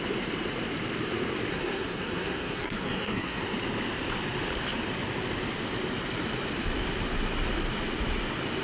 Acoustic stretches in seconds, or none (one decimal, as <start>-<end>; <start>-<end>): 0.0-1.5; 3.4-8.6